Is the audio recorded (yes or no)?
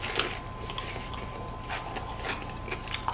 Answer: yes